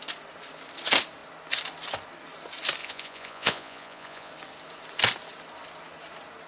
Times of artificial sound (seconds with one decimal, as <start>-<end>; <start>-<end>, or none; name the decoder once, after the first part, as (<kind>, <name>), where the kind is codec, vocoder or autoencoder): 2.8-4.3 (vocoder, Vocos)